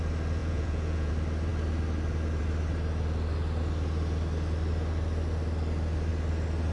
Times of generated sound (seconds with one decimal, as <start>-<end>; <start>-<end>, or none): 0.4-1.1